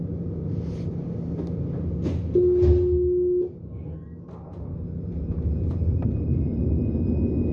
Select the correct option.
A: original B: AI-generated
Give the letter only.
A